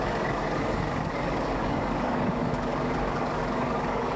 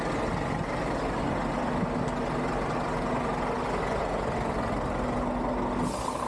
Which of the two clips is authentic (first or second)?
second